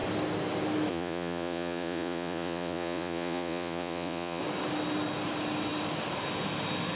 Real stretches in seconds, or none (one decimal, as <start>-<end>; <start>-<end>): 0.0-0.9; 4.4-7.0